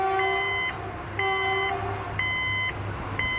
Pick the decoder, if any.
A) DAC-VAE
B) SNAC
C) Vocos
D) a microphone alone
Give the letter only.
D